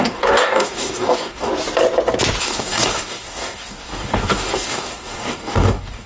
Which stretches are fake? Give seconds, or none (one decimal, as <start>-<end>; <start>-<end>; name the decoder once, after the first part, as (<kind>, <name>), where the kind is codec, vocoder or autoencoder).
0.0-1.5 (codec, DAC); 2.4-6.1